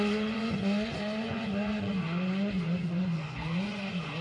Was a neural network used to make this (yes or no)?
yes